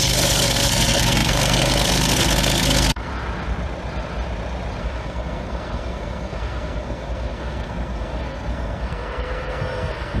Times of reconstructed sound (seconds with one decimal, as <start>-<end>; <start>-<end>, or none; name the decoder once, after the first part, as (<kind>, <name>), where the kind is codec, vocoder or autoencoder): 0.0-3.1 (codec, SNAC); 4.8-10.2